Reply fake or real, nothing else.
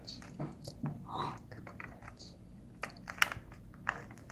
real